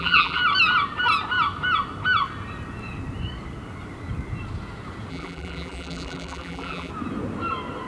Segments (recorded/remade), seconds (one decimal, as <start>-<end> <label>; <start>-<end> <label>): 0.0-0.4 remade; 0.4-5.1 recorded; 5.1-6.9 remade; 6.9-7.9 recorded